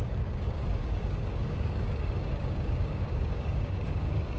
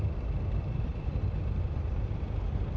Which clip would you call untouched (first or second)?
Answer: second